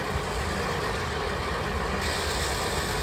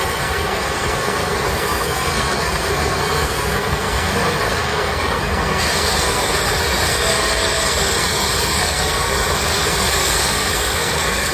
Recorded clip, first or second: first